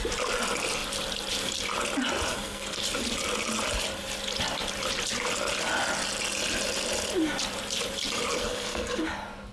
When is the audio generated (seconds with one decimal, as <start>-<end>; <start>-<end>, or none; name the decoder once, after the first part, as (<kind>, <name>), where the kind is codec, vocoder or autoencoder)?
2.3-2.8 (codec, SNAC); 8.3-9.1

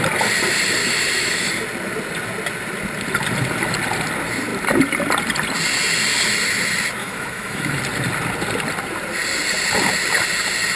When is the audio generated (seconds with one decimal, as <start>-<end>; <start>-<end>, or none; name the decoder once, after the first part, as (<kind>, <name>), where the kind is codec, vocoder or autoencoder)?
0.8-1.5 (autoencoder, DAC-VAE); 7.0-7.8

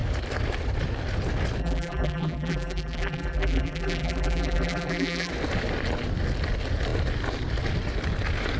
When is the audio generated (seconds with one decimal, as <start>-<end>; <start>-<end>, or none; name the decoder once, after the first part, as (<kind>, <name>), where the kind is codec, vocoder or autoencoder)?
1.6-5.3 (vocoder, BigVGAN v2)

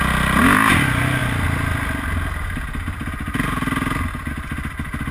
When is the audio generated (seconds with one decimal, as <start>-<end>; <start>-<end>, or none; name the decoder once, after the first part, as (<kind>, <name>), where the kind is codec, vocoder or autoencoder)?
none